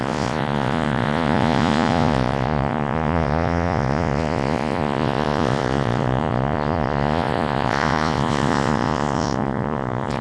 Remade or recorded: remade